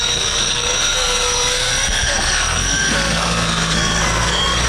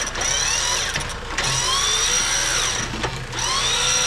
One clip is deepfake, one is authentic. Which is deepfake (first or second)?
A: first